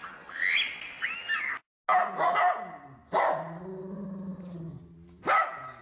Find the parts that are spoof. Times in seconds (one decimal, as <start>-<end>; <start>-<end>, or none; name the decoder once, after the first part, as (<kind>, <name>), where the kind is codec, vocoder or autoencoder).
none